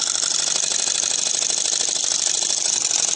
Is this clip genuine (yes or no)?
yes